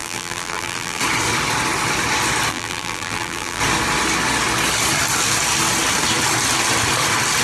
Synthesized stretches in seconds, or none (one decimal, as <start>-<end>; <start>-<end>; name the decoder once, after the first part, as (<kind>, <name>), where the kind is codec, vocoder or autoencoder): 0.0-1.0 (vocoder, BigVGAN v2); 2.5-3.6